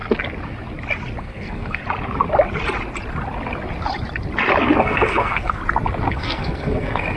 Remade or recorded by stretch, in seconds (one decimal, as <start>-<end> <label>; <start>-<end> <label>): 0.0-1.2 recorded; 1.2-1.8 remade; 1.8-4.8 recorded; 4.8-5.6 remade; 5.6-6.1 recorded; 6.1-7.2 remade